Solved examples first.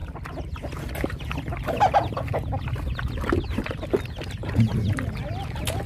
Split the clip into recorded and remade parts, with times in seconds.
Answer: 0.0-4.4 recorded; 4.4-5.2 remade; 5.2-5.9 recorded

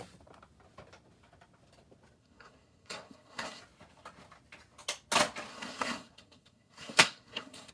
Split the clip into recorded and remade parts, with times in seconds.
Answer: 0.0-2.2 recorded; 2.2-3.6 remade; 3.6-5.5 recorded; 5.5-7.7 remade